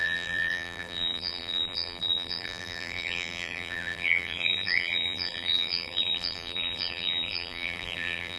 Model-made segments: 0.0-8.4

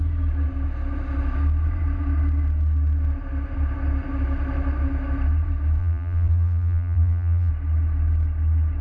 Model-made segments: 5.8-7.5